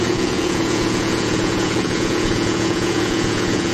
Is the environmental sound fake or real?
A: fake